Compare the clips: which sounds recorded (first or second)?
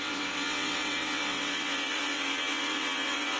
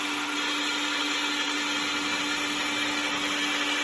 second